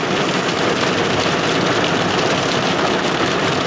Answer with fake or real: fake